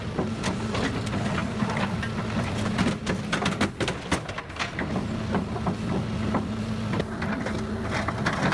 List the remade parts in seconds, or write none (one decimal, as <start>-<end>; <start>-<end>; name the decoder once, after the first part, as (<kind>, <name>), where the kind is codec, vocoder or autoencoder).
none